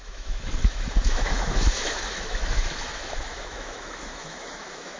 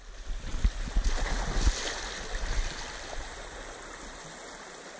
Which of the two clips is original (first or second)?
second